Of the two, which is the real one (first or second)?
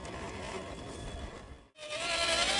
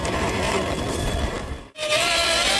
first